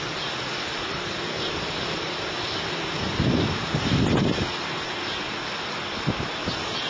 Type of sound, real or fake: real